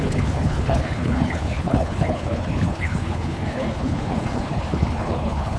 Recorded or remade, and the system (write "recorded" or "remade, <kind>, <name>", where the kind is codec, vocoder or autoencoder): remade, codec, HILCodec